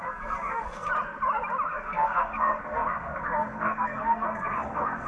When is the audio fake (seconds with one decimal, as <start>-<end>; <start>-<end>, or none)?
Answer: 0.0-0.9; 1.7-5.1